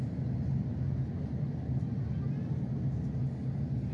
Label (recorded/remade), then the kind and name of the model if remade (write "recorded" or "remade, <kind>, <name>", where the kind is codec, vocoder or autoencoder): recorded